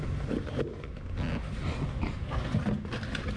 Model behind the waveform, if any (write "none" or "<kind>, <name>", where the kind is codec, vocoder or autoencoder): none